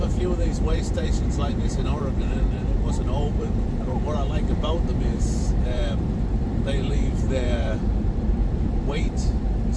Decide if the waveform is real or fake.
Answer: fake